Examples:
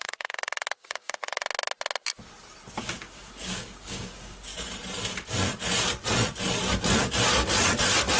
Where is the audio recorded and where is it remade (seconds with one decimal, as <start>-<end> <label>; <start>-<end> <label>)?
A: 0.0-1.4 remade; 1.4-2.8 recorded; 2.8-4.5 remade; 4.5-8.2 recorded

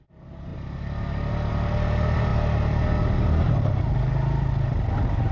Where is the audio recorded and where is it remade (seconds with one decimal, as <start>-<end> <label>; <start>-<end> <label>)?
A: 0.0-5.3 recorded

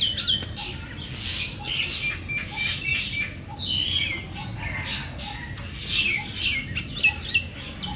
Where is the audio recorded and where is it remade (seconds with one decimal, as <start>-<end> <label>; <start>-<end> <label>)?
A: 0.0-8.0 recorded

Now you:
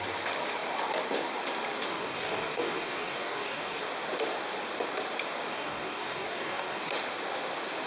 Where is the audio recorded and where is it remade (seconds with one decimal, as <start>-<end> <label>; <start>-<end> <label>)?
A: 0.0-1.9 recorded; 1.9-3.8 remade; 3.8-5.5 recorded; 5.5-6.8 remade; 6.8-7.9 recorded

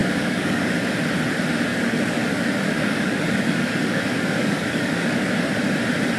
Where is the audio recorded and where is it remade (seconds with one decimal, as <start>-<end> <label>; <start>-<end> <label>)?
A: 0.0-0.9 remade; 0.9-1.7 recorded; 1.7-5.4 remade; 5.4-6.2 recorded